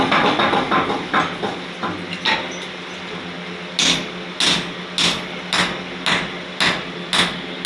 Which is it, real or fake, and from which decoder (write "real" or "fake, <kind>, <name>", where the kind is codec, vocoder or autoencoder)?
real